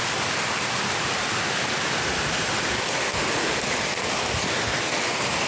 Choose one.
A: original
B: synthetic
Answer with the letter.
A